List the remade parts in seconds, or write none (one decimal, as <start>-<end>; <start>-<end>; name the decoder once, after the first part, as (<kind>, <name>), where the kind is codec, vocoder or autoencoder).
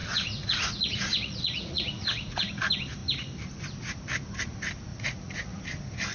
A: 0.0-2.5 (vocoder, Vocos); 4.9-5.6